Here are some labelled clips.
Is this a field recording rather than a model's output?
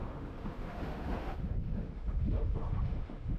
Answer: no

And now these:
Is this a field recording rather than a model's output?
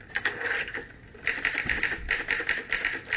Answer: yes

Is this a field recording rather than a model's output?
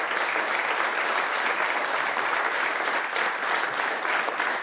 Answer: yes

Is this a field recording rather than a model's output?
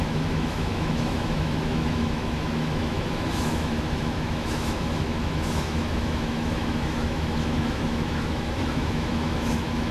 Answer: no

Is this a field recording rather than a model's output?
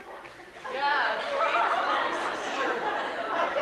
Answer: yes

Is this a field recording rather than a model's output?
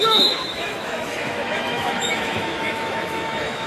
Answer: no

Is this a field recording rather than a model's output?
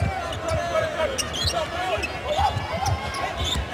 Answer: yes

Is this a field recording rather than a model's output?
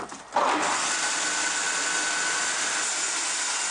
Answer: yes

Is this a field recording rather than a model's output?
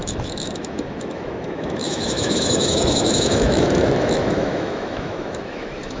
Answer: no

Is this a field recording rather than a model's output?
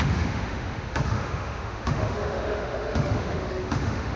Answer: no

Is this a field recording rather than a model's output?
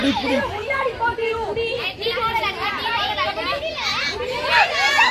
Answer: yes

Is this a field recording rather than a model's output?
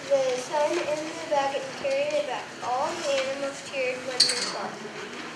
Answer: yes